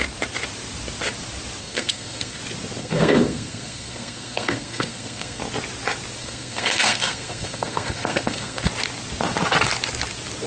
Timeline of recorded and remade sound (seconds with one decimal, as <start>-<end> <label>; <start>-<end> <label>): 0.0-1.6 recorded; 1.6-2.4 remade; 2.4-2.8 recorded; 2.8-5.4 remade; 5.4-6.2 recorded; 6.2-8.7 remade; 8.7-10.5 recorded